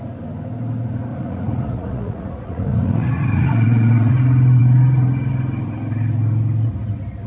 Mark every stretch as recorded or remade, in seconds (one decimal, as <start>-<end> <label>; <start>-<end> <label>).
0.0-1.1 recorded; 1.1-4.1 remade; 4.1-7.3 recorded